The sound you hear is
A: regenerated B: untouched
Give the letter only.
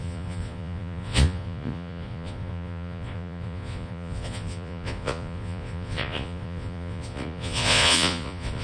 A